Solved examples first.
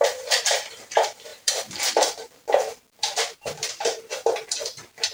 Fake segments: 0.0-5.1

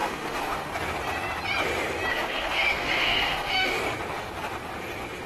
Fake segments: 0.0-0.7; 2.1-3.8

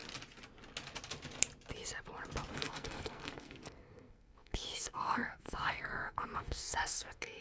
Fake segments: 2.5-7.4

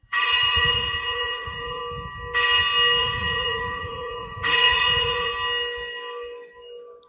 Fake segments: 0.0-1.8; 3.0-5.3